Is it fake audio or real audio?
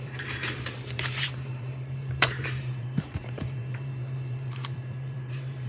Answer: fake